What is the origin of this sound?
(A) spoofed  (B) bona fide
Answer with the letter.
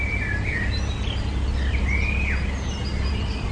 B